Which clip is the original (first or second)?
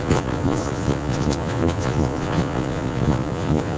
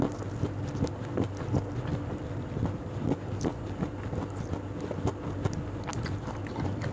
second